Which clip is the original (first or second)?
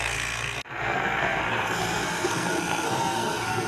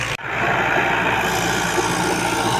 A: second